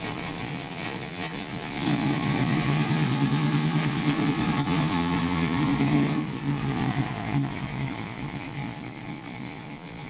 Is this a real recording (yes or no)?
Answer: no